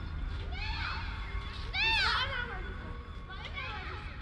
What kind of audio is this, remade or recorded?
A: recorded